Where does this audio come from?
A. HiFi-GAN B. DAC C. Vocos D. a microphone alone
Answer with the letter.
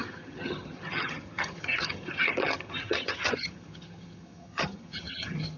A